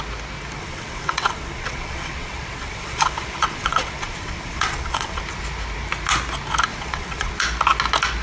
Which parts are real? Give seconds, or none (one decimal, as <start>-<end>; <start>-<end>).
0.0-0.6; 5.2-6.7; 7.3-8.2

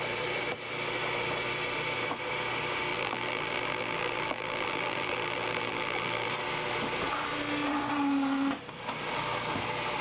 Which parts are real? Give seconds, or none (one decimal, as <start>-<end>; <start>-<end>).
0.0-2.9; 6.3-10.0

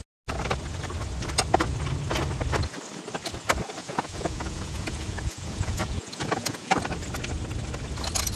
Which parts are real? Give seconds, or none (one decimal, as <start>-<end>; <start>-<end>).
0.0-3.8; 6.8-8.3

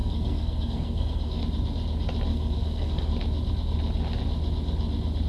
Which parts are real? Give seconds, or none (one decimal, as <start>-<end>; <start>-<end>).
1.4-2.3; 3.1-5.3

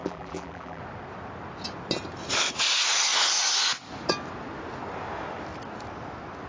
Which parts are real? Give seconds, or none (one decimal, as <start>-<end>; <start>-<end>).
0.8-6.5

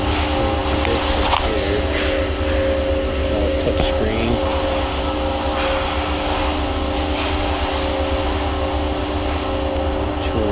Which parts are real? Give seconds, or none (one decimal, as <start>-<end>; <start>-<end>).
0.0-10.5

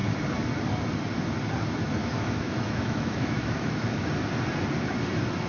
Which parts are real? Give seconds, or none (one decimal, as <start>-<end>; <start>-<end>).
0.0-2.0; 4.1-5.5